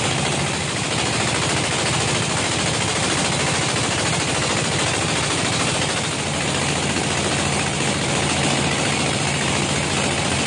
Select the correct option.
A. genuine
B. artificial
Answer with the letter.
A